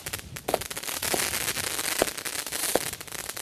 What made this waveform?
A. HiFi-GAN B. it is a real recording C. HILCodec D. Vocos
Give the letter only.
B